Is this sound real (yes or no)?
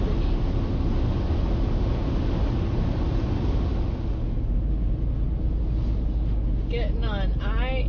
yes